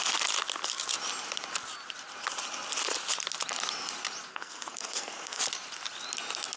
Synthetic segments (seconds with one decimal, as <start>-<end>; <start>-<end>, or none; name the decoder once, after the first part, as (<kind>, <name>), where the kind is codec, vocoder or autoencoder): 4.3-5.4 (codec, SNAC)